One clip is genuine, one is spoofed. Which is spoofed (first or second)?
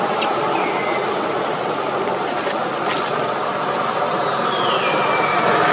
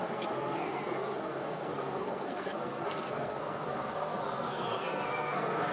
second